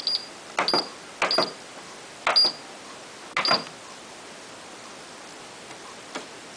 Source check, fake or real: real